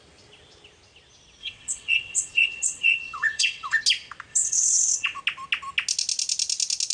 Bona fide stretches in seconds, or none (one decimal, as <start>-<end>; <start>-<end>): 0.0-1.4; 3.8-4.3; 5.2-6.9